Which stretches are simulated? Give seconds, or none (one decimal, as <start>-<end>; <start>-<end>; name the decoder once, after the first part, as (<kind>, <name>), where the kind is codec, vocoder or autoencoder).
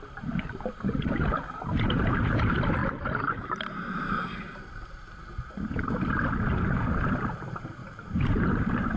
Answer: 0.0-2.8 (vocoder, BigVGAN v2); 6.5-9.0